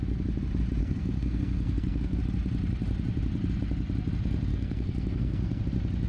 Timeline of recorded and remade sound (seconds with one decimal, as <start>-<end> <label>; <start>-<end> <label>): 0.0-0.8 recorded; 0.8-2.2 remade; 2.2-4.5 recorded; 4.5-5.6 remade; 5.6-6.1 recorded